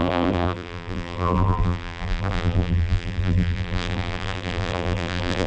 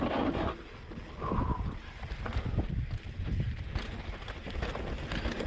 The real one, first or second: second